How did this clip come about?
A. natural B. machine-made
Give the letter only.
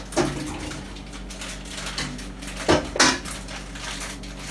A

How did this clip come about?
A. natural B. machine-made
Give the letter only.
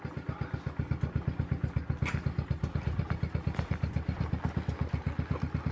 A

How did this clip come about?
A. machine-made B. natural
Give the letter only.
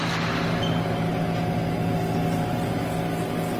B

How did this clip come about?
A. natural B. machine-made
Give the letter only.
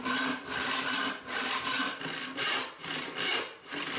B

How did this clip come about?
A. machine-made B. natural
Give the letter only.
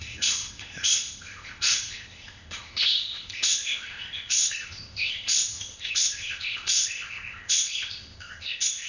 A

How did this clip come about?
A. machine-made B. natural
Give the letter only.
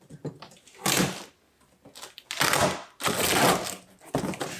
B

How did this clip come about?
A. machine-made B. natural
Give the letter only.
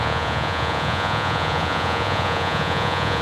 A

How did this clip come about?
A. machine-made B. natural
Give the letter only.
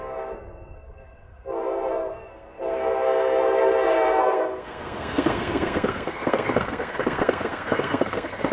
A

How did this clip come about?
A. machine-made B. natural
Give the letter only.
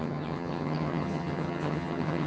A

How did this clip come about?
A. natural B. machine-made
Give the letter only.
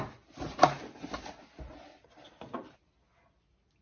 A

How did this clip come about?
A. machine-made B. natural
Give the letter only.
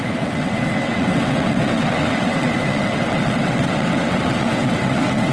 A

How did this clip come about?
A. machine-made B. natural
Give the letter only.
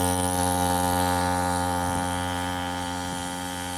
B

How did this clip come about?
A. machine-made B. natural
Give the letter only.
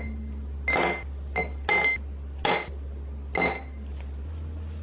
B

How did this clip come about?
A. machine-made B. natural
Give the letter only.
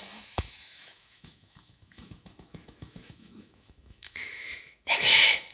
A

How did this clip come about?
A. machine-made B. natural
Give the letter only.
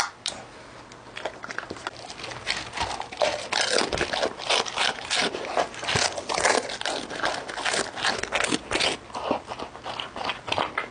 B